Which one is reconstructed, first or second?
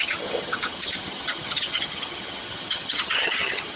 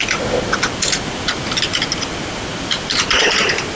first